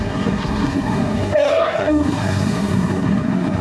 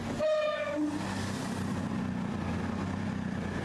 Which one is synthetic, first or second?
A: first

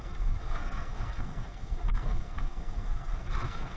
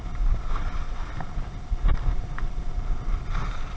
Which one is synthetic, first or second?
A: first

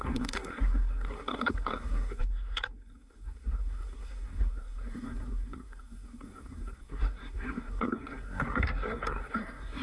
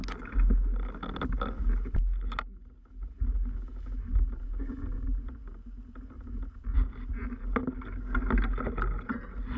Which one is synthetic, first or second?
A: first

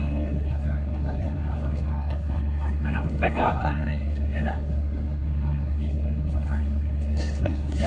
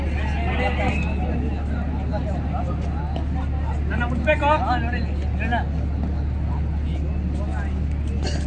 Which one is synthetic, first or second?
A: first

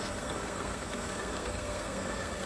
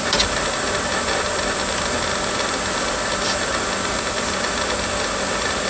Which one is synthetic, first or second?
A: first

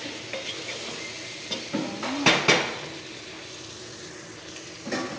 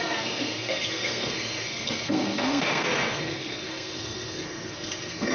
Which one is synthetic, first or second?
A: second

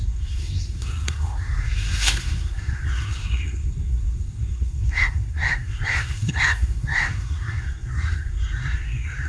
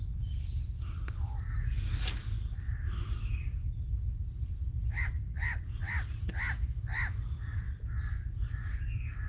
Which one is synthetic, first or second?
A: first